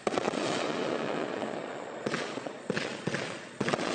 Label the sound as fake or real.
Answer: fake